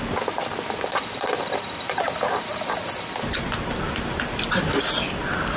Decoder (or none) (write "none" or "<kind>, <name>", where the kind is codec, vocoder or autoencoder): none